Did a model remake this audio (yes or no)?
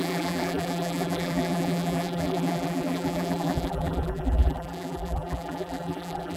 yes